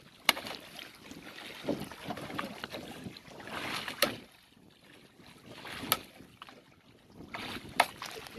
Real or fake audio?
real